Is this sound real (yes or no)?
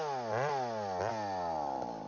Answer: yes